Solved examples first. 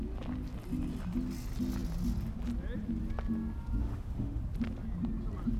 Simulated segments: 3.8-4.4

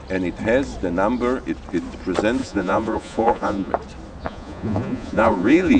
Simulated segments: 2.4-3.7; 4.2-5.8

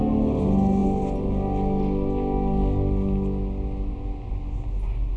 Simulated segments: none

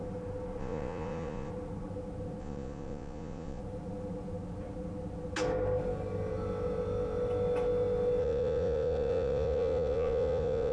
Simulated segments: 0.6-1.5; 2.4-3.6; 8.2-10.7

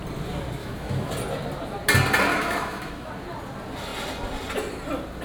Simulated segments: 0.6-1.1; 2.3-3.1